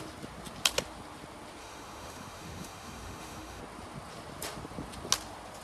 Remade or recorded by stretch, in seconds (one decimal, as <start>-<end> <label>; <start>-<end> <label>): 0.0-1.6 recorded; 1.6-3.6 remade; 3.6-5.6 recorded